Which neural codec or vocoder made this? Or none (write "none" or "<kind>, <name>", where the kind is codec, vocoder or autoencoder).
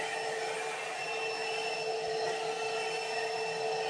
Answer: none